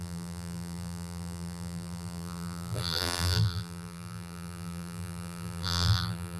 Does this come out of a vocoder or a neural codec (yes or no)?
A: yes